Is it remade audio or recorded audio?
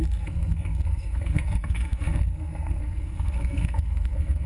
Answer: remade